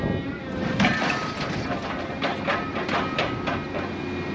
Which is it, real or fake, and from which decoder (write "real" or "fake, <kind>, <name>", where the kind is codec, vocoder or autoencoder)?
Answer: real